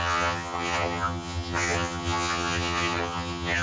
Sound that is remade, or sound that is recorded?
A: remade